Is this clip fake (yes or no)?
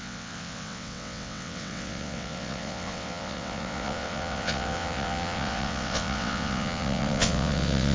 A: yes